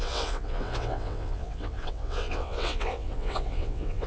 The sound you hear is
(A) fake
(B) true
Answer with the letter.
A